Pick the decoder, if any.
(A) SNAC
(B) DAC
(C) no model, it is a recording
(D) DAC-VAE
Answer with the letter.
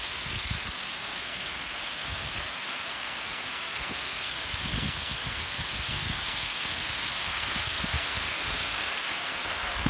A